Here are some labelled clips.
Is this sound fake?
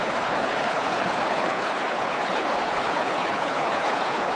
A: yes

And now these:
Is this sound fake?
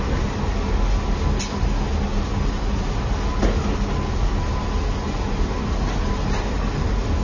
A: no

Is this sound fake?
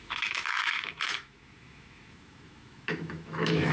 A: yes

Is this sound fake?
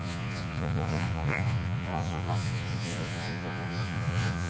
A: yes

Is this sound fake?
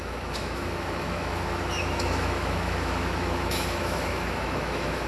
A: yes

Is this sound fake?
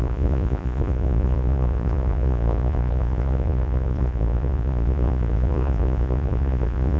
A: yes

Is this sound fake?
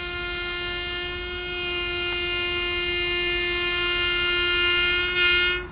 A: no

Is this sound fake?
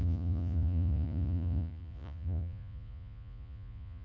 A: yes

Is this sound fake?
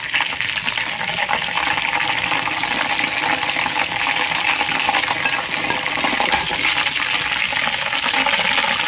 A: no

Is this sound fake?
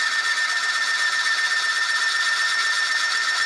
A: no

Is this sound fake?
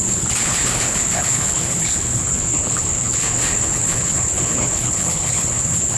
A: yes